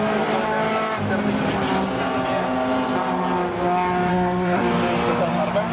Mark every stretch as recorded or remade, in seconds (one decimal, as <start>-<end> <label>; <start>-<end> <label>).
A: 0.0-4.1 recorded; 4.1-4.6 remade; 4.6-5.7 recorded